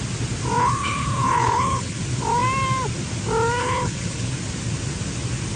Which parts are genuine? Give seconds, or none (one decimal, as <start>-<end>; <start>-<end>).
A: 0.0-0.6; 2.0-3.6; 4.3-5.6